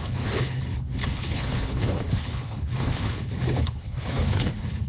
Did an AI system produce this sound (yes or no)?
yes